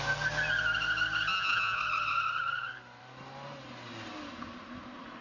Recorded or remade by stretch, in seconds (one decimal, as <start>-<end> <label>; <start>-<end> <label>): 0.0-1.3 recorded; 1.3-1.8 remade; 1.8-5.2 recorded